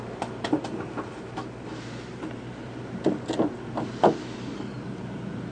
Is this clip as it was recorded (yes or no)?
yes